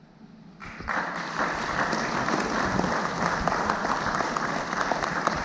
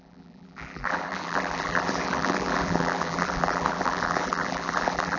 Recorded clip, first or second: first